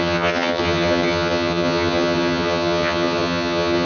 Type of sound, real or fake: fake